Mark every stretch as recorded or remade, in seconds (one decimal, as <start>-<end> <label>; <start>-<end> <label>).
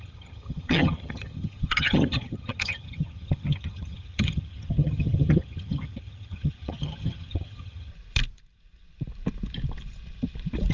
0.0-7.9 remade; 7.9-10.7 recorded